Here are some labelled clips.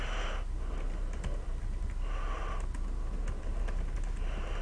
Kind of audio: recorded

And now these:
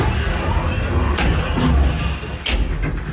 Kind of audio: recorded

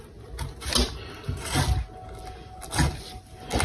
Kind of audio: recorded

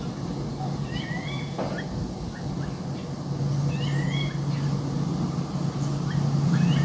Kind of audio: recorded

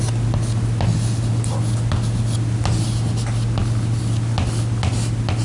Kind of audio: recorded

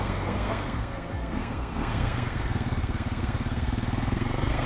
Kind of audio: remade